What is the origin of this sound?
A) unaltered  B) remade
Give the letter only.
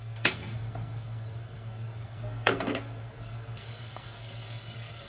B